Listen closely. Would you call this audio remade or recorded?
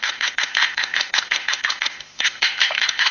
remade